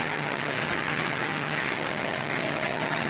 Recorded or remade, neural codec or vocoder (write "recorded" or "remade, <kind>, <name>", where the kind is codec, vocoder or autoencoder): remade, vocoder, HiFi-GAN